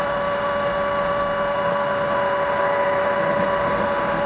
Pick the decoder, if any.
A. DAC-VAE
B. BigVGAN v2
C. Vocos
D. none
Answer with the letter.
A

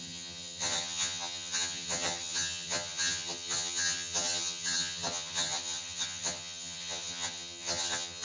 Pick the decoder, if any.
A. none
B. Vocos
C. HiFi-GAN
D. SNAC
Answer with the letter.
C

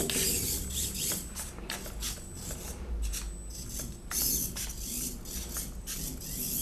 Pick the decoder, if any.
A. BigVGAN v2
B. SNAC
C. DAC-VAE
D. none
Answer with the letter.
D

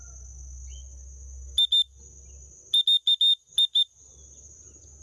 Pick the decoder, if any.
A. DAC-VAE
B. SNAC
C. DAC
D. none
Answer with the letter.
D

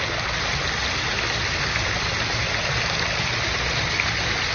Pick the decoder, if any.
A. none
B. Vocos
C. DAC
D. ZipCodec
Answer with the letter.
A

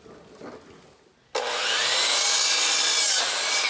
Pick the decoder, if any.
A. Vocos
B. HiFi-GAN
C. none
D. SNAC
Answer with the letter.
C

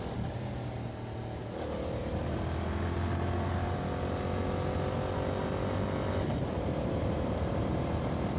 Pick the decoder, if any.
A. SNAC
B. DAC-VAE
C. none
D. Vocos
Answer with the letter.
C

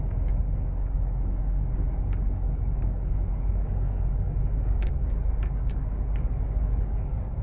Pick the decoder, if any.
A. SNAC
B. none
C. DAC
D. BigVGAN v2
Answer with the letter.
C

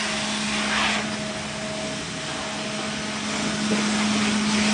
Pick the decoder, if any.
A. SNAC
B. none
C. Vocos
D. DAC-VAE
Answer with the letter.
B